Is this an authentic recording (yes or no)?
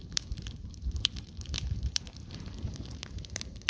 no